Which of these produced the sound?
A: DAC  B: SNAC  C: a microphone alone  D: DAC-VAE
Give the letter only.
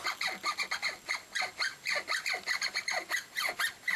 C